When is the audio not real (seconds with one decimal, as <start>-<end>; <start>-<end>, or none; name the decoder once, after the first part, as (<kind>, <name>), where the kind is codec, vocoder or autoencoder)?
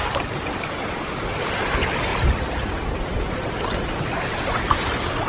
0.0-0.8 (vocoder, BigVGAN v2); 2.1-4.0